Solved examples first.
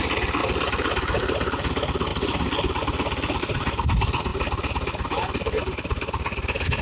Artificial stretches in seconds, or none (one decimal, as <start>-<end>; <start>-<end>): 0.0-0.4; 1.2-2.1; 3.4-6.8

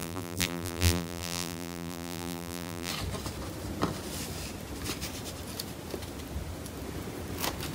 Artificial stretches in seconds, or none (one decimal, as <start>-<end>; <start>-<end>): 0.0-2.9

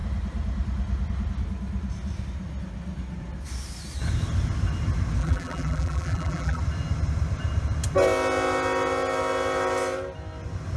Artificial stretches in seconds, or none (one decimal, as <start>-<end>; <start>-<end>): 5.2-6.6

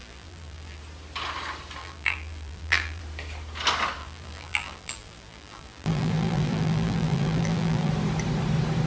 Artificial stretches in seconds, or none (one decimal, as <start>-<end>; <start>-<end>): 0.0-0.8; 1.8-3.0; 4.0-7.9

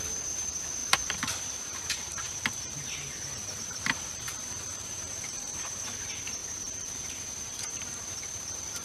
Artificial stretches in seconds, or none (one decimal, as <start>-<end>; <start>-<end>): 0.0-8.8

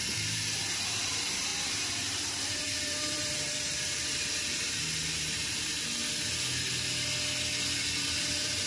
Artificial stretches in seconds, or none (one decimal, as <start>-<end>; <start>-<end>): 0.0-6.0; 8.2-8.7

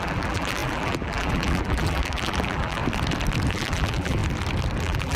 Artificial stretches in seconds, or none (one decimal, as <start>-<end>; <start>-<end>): 0.0-2.8; 3.5-4.2; 4.8-5.2